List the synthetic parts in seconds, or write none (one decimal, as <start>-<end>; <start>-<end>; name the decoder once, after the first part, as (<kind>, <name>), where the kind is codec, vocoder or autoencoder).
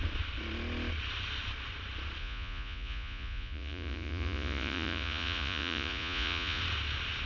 2.2-6.6 (vocoder, Vocos)